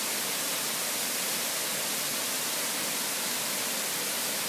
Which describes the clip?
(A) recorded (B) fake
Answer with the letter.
A